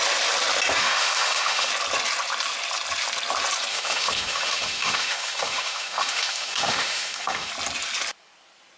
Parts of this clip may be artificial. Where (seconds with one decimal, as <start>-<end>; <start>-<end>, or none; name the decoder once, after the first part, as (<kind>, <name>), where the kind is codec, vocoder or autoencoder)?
0.8-1.7 (autoencoder, DAC-VAE); 3.7-7.5